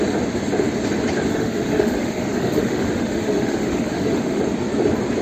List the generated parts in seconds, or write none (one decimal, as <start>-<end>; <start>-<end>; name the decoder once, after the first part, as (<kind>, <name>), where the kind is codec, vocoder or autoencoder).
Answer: 1.3-4.4 (autoencoder, DAC-VAE)